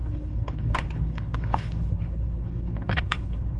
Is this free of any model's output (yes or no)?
no